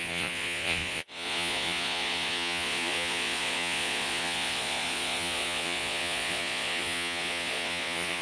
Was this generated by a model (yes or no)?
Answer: yes